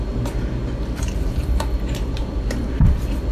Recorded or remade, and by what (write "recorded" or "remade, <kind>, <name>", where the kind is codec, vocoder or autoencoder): remade, vocoder, BigVGAN v2